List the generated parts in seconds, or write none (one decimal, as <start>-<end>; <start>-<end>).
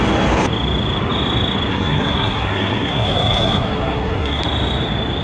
1.7-4.4